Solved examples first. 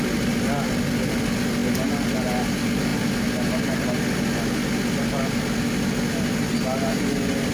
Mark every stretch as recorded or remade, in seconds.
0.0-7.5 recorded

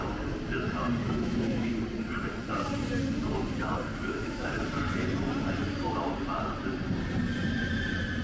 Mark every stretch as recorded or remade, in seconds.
0.0-1.0 recorded; 1.0-1.7 remade; 1.7-3.9 recorded; 3.9-4.5 remade; 4.5-8.2 recorded